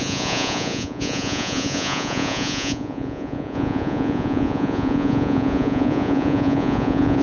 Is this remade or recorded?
remade